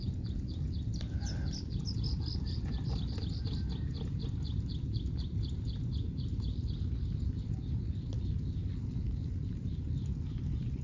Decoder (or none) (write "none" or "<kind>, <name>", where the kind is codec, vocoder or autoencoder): none